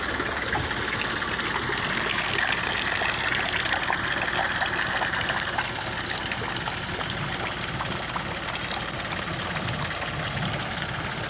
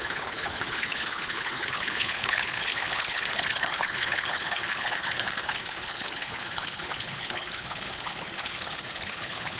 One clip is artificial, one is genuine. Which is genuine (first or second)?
first